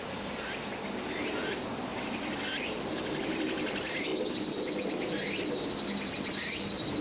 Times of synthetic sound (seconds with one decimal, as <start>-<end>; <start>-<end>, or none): none

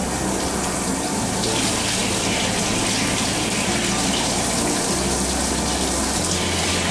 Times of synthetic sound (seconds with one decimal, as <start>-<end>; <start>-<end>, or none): none

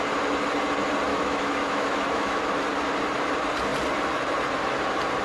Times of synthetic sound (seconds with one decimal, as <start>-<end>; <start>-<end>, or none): 1.1-2.5

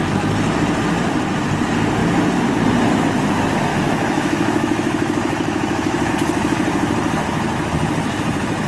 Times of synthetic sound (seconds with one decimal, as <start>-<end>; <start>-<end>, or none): 3.7-6.1

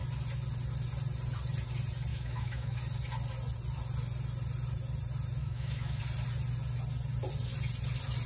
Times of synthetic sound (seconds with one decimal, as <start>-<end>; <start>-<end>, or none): 2.1-2.8; 5.4-6.0

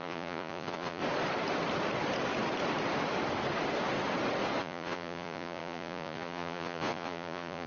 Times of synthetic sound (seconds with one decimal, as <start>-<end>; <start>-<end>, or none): 0.0-1.0; 4.6-7.7